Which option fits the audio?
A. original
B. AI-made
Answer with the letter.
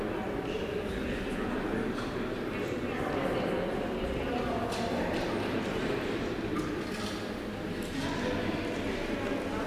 A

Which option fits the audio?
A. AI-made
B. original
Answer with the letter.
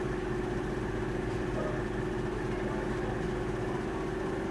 B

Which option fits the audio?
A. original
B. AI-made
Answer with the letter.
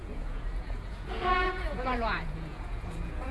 B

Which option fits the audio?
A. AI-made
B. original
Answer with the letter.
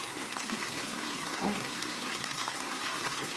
A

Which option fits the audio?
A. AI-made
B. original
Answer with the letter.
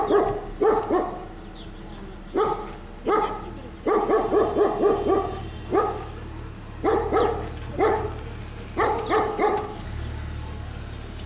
B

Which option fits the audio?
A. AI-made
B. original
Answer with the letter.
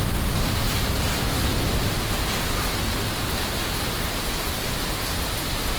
B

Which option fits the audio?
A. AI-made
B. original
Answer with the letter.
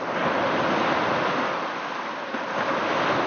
B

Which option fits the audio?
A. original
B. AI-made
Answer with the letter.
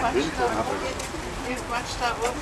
A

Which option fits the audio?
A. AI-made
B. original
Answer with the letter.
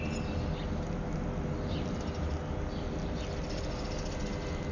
B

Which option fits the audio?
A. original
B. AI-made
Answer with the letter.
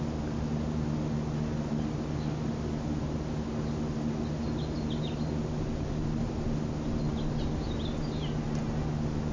A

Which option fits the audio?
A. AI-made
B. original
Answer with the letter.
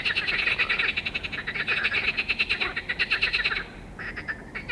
B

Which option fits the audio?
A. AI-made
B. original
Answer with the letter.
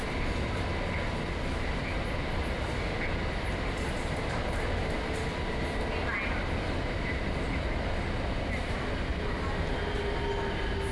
B